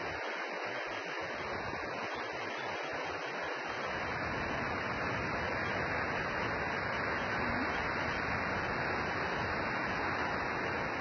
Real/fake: real